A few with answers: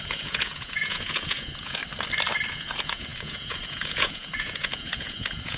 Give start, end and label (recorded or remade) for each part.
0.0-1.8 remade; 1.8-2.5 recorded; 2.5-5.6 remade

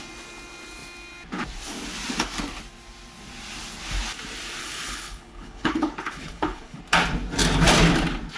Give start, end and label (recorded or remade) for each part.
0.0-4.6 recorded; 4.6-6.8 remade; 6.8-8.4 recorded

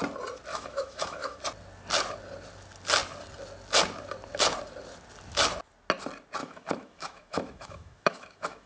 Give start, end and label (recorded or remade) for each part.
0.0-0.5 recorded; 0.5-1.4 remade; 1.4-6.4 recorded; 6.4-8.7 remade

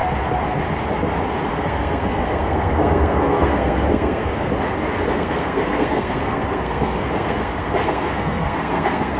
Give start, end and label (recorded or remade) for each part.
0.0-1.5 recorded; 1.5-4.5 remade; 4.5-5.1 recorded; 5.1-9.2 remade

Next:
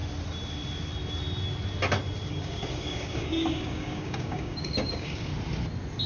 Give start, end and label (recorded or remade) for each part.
0.0-2.3 recorded; 2.3-5.3 remade; 5.3-6.1 recorded

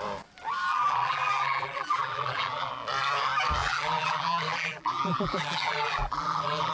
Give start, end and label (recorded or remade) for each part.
0.0-0.7 recorded; 0.7-2.7 remade; 2.7-3.6 recorded; 3.6-6.7 remade